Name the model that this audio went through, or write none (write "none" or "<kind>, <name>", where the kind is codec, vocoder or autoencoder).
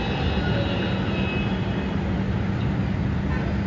none